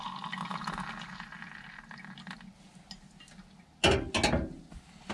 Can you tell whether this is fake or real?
real